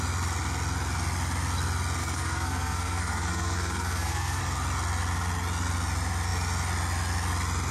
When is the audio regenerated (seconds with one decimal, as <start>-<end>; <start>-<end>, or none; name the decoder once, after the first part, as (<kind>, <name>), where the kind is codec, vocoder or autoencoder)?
2.0-4.4 (codec, SNAC)